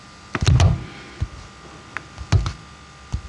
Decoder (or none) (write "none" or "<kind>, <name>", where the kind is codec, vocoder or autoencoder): none